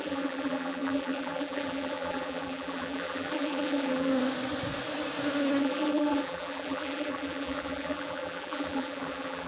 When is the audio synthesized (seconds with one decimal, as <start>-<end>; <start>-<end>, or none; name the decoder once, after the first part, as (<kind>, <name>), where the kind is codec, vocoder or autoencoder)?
0.0-4.1 (vocoder, BigVGAN v2); 5.6-9.5